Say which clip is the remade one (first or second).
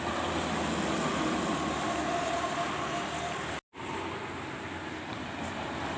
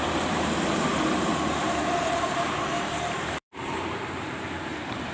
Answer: second